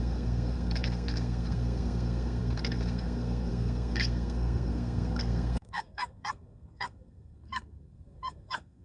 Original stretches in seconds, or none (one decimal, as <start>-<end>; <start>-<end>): none